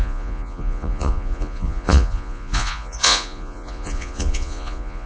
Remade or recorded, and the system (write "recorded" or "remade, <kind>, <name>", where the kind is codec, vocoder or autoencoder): remade, vocoder, Vocos